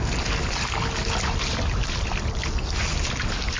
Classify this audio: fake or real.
real